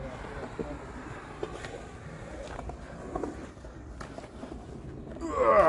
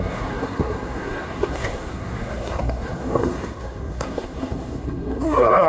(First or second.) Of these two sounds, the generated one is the second